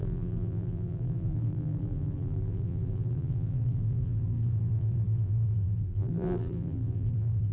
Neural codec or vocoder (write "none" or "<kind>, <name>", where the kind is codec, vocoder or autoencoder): vocoder, BigVGAN v2